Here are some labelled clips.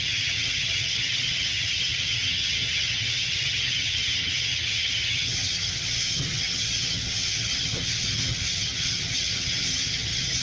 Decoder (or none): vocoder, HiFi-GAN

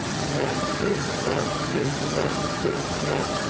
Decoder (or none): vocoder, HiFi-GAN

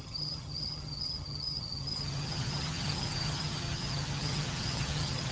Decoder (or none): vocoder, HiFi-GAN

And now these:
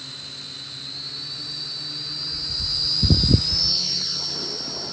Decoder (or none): none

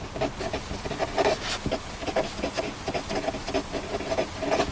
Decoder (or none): none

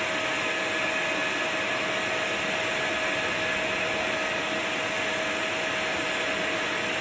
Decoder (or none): none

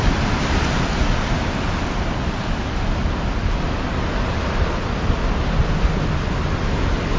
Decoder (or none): none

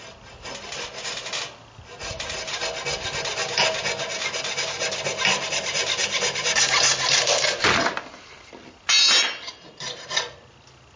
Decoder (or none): none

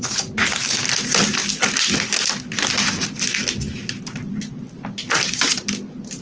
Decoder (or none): none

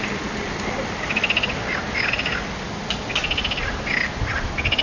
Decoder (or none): none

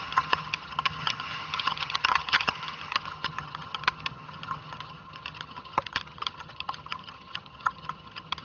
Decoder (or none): vocoder, HiFi-GAN